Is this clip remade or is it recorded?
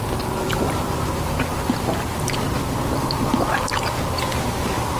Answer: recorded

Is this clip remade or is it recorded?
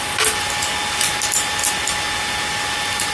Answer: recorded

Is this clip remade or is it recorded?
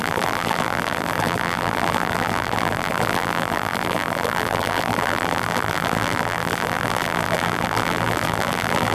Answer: remade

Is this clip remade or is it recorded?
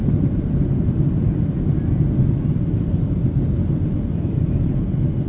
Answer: remade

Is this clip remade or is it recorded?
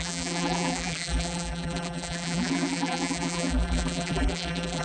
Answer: remade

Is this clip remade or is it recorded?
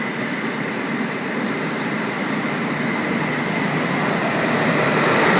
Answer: remade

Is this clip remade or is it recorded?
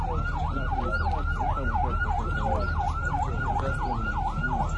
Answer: recorded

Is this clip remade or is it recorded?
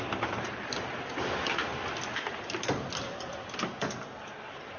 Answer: recorded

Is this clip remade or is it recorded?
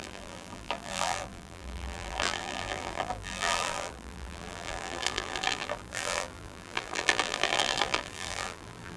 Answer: remade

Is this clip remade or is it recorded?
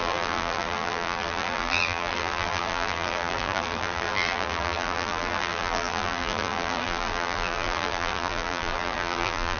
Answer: remade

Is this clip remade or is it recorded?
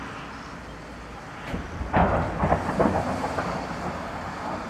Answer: recorded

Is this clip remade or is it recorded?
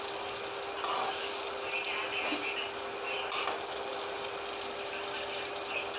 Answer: remade